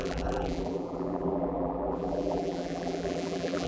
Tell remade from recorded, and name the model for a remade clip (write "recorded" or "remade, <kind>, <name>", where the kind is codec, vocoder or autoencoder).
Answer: remade, vocoder, BigVGAN v2